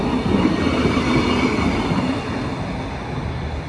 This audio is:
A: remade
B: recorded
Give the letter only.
B